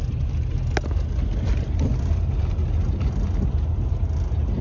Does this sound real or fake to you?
real